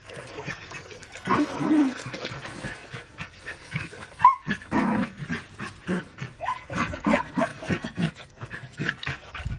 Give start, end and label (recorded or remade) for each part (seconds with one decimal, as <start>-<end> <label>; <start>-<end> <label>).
0.0-5.2 remade; 5.2-5.9 recorded; 5.9-9.6 remade